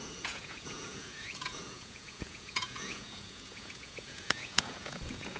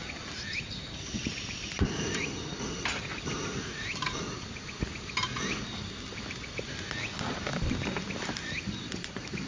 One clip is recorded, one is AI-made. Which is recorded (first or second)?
second